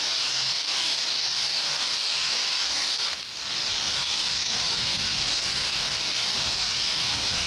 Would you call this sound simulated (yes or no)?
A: yes